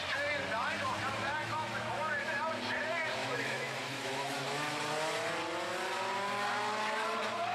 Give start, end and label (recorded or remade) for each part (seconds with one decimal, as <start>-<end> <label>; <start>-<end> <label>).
0.0-1.4 recorded; 1.4-2.4 remade; 2.4-3.2 recorded; 3.2-4.8 remade; 4.8-7.5 recorded

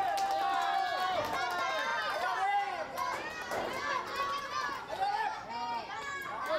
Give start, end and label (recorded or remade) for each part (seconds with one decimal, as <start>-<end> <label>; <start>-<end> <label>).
0.0-6.6 recorded

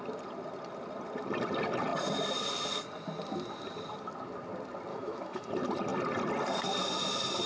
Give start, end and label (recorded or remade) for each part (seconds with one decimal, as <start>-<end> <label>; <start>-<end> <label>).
0.0-4.9 recorded; 4.9-5.5 remade; 5.5-7.5 recorded

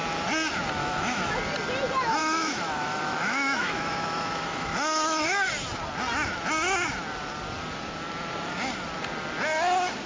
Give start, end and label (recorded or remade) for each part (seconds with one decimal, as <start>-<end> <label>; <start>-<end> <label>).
0.0-0.8 recorded; 0.8-1.3 remade; 1.3-2.2 recorded; 2.2-5.5 remade; 5.5-10.1 recorded

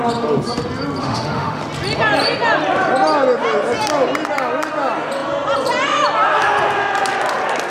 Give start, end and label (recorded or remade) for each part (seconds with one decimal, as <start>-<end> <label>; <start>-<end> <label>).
0.0-1.0 recorded; 1.0-1.6 remade; 1.6-7.7 recorded